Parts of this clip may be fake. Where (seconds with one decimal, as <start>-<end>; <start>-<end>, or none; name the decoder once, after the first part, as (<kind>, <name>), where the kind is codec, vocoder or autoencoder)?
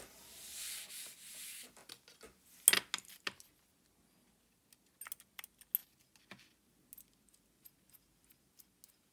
none